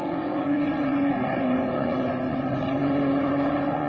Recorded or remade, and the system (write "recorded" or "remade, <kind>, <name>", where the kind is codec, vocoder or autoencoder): remade, vocoder, Vocos